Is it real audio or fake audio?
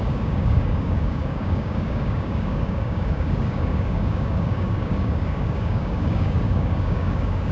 fake